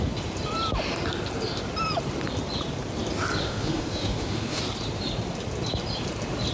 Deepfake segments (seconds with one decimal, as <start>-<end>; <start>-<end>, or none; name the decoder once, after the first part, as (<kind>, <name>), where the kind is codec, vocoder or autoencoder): 3.4-4.6 (autoencoder, DAC-VAE)